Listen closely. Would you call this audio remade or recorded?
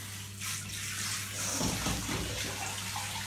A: recorded